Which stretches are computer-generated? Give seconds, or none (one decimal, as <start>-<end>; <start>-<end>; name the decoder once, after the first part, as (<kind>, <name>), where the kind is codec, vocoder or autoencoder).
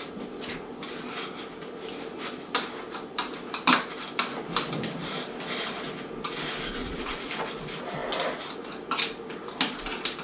6.8-7.3 (vocoder, Vocos)